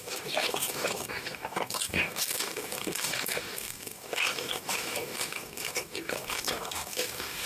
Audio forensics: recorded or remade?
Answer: remade